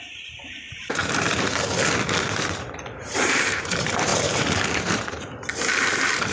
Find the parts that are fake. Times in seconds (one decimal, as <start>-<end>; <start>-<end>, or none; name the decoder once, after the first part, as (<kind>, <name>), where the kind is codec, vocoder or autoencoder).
0.0-1.0 (vocoder, BigVGAN v2); 2.3-6.3